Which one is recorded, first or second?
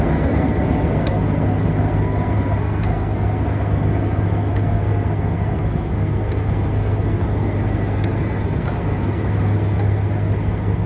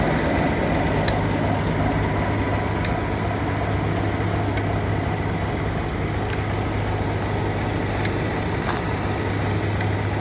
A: second